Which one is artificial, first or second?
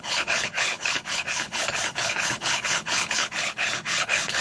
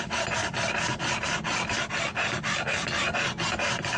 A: first